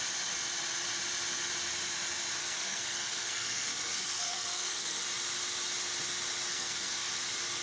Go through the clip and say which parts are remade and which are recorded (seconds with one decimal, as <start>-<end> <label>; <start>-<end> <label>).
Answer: 0.0-2.4 recorded; 2.4-5.0 remade; 5.0-6.5 recorded; 6.5-7.1 remade; 7.1-7.6 recorded